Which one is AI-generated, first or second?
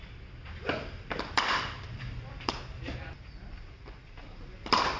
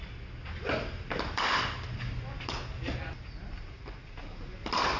first